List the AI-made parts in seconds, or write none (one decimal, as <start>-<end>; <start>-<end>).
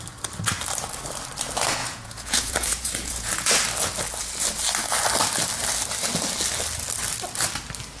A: 1.8-3.5